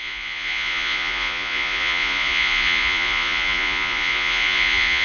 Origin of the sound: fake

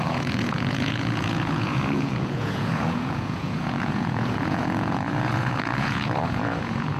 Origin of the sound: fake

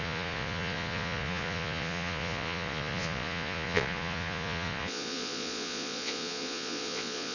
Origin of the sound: fake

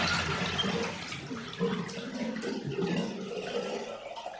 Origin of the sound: real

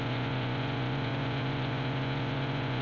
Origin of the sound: fake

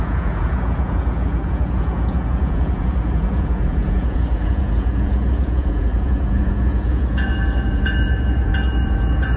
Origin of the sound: fake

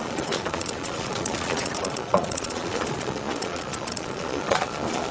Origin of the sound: fake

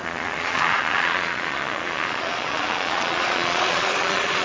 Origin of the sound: fake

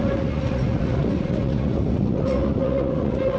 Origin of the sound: fake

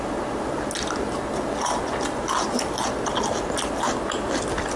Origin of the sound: real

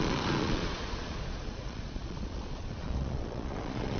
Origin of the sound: fake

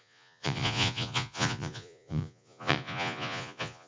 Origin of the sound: fake